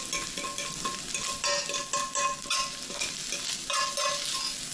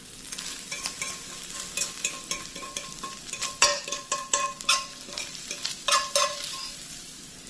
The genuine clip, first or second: first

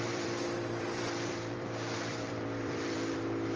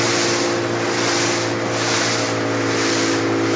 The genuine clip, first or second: second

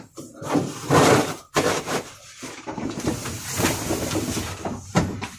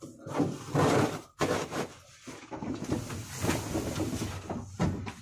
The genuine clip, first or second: second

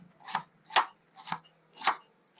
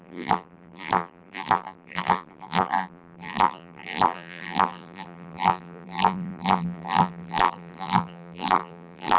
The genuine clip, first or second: first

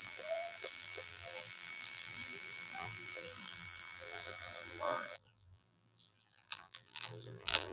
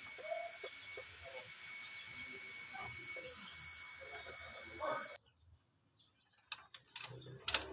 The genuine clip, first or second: second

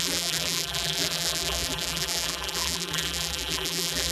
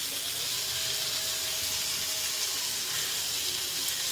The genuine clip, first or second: second